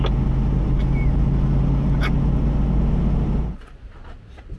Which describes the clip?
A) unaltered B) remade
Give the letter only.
A